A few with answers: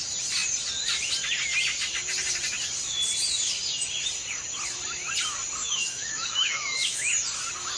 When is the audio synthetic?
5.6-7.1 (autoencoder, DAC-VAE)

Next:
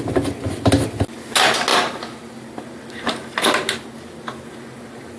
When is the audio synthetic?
none

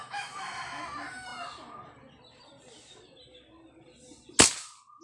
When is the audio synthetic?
0.0-0.8 (autoencoder, DAC-VAE)

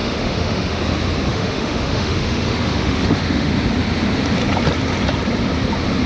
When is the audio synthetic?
0.0-0.8 (autoencoder, DAC-VAE); 1.3-3.5

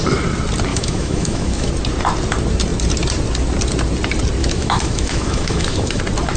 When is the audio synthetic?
0.7-1.7 (autoencoder, DAC-VAE); 4.4-6.0

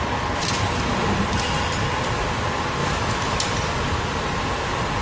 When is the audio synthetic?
2.8-3.4 (autoencoder, DAC-VAE)

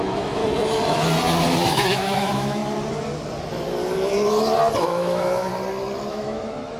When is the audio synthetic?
0.0-0.4 (autoencoder, DAC-VAE); 1.7-2.6; 4.8-5.5; 6.1-6.8